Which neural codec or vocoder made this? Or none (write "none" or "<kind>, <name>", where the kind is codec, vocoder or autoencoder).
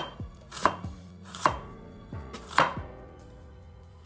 vocoder, Vocos